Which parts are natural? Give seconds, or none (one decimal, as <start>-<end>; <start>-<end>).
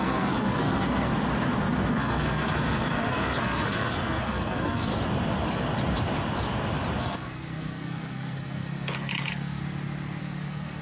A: 1.1-1.9; 4.9-7.0; 9.6-10.2